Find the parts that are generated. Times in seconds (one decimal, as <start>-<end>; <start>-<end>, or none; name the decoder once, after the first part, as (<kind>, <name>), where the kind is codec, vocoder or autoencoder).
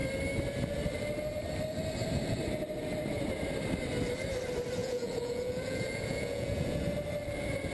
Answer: 4.8-6.8 (vocoder, Vocos)